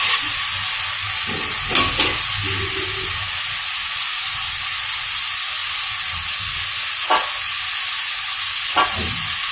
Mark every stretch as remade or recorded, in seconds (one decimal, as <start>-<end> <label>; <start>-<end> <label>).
0.0-9.5 recorded